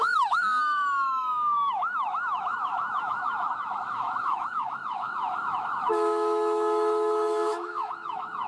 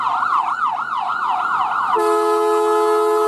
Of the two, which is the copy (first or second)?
first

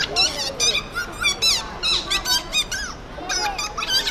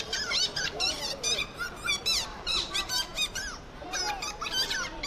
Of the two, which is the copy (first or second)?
second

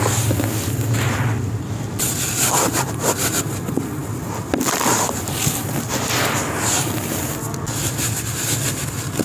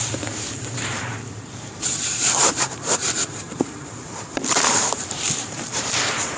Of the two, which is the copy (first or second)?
second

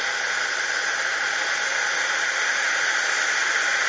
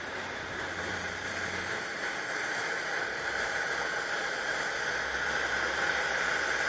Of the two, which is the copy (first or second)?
second